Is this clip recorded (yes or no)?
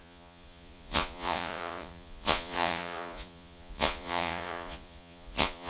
no